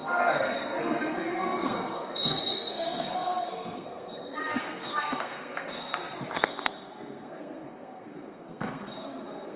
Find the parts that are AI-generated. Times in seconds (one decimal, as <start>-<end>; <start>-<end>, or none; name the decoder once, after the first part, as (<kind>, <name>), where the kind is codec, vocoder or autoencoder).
0.0-9.6 (codec, SNAC)